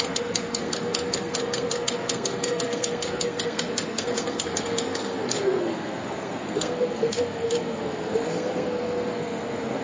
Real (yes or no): no